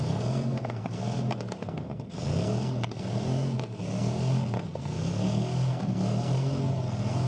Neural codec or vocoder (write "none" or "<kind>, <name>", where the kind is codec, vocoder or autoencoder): codec, SNAC